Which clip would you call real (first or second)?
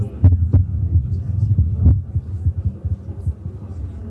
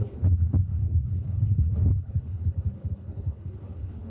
first